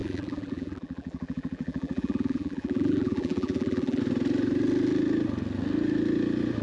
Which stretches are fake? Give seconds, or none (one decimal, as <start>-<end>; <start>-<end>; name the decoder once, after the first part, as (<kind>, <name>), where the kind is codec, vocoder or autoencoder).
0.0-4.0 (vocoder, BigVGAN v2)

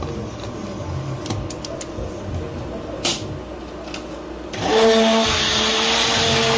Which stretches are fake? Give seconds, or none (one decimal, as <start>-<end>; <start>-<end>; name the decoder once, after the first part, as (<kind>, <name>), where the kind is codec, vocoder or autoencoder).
none

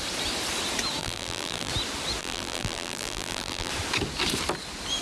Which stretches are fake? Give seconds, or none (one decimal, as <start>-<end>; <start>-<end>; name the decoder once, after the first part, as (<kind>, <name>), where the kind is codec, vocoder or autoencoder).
1.0-1.7 (vocoder, BigVGAN v2); 2.2-3.7

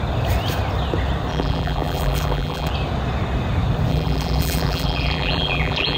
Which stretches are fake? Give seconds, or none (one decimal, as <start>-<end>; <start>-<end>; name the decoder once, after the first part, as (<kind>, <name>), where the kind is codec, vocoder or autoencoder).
1.3-2.7 (vocoder, BigVGAN v2); 3.9-6.0

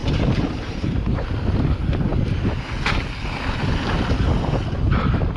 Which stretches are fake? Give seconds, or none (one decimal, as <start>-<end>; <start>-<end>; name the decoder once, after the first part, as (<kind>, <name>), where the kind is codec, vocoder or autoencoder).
0.0-1.3 (vocoder, BigVGAN v2)